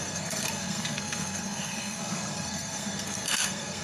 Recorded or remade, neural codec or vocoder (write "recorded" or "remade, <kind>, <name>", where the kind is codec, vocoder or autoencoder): remade, codec, SNAC